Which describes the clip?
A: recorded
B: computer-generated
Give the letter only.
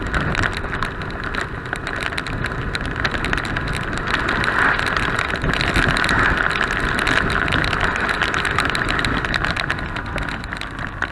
A